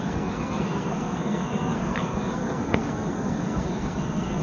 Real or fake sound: fake